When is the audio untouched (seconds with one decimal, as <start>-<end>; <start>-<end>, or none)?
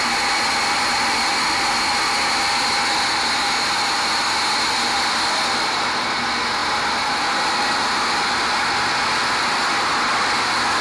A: 0.0-10.8